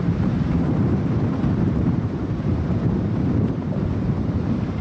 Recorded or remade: remade